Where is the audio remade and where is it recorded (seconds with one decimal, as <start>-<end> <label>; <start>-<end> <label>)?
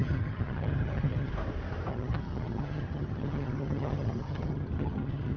0.0-1.3 remade; 1.3-1.9 recorded; 1.9-5.4 remade